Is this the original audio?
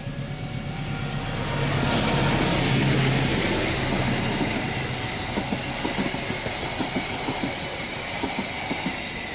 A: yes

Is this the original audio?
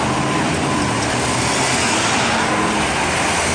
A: yes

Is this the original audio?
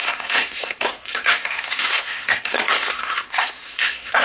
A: no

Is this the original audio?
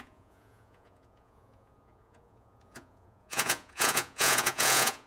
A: no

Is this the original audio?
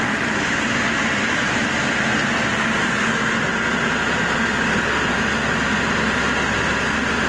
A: yes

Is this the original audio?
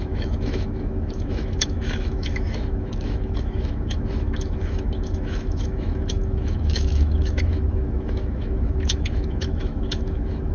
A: no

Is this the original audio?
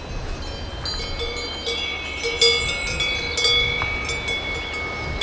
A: yes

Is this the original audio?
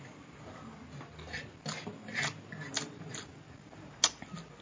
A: yes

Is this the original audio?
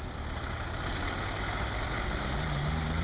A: yes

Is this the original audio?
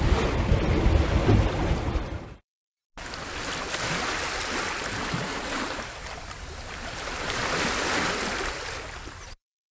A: yes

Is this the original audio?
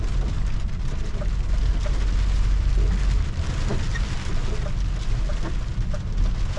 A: yes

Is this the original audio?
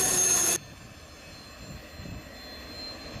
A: yes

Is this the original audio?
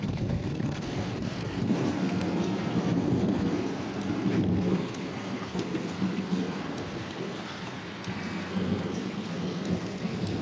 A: no